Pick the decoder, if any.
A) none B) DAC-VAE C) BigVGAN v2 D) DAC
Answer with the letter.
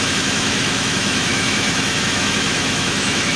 B